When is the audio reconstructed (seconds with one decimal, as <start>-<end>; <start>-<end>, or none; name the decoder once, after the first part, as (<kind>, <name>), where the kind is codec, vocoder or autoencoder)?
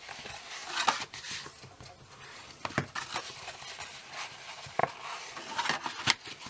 none